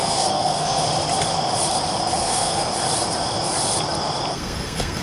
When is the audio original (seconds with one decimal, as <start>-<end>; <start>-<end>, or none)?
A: 0.8-2.2; 2.7-4.3